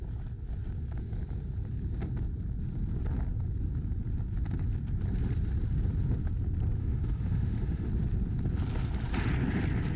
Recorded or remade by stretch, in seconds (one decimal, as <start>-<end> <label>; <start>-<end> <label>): 0.0-6.8 recorded; 6.8-7.9 remade; 7.9-10.0 recorded